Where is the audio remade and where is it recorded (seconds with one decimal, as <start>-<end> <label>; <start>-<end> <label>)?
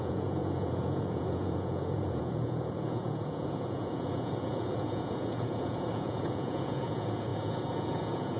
0.0-8.4 remade